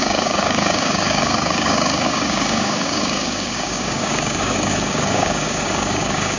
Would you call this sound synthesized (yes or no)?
yes